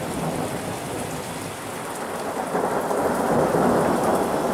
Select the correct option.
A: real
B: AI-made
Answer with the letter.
A